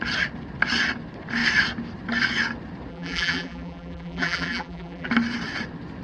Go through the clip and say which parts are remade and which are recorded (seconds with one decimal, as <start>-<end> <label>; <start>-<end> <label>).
0.0-2.9 recorded; 2.9-5.1 remade; 5.1-6.0 recorded